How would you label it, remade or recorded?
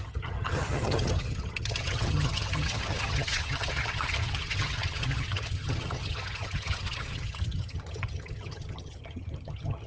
remade